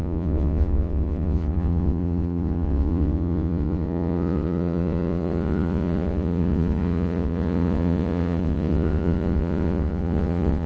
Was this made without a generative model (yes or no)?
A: no